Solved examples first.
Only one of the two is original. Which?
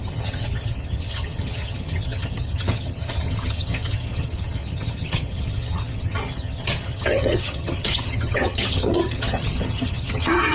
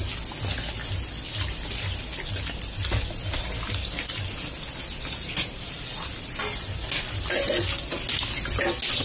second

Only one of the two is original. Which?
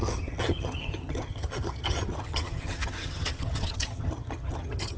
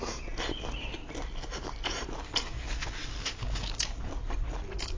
second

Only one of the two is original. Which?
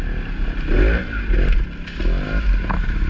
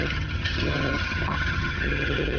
first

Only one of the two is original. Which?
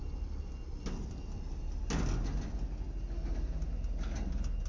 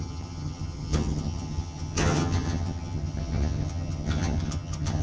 first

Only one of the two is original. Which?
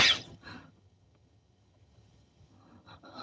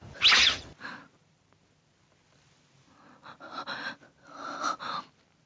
second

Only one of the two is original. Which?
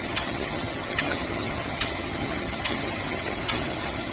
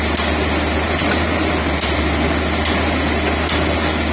second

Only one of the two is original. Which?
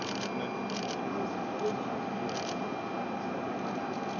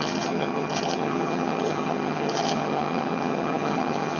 first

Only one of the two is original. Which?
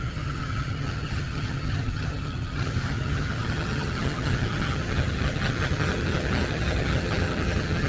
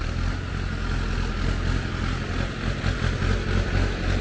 second